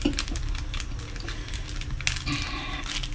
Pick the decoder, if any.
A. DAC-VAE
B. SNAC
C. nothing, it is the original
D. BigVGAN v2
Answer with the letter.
C